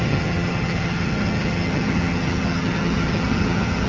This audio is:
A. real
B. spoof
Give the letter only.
B